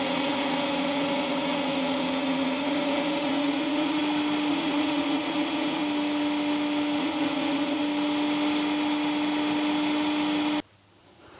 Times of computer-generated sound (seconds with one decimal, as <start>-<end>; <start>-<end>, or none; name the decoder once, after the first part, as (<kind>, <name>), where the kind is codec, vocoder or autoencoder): 0.0-4.0 (vocoder, Vocos); 4.5-5.8; 7.0-7.8; 11.0-11.4